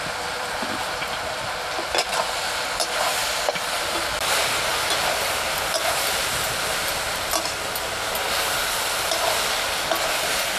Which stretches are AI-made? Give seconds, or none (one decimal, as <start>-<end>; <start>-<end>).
4.7-6.3